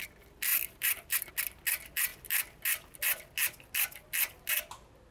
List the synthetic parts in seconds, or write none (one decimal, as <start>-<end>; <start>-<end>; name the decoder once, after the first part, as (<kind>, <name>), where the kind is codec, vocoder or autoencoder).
0.5-1.3 (vocoder, BigVGAN v2)